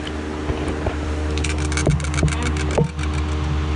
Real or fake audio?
real